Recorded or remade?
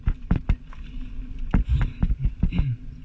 recorded